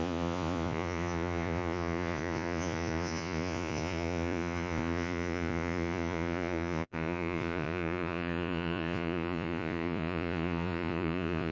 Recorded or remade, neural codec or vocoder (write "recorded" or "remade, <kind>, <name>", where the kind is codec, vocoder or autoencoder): remade, vocoder, Vocos